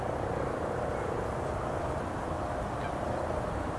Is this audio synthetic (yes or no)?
no